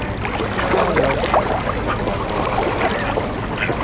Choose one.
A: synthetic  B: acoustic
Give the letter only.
B